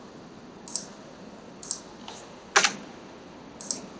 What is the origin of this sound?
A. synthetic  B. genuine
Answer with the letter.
B